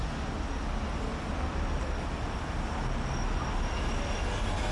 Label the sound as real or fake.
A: real